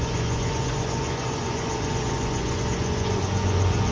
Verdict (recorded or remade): remade